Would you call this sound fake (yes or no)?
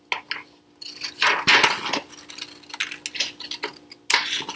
no